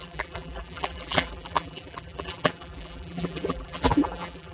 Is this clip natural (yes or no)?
no